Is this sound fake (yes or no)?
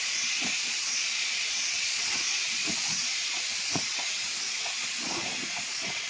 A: yes